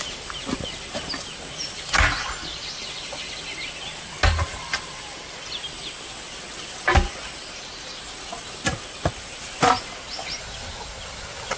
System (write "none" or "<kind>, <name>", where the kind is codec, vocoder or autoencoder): none